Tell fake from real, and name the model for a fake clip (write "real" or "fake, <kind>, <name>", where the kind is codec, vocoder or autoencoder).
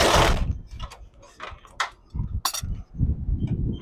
real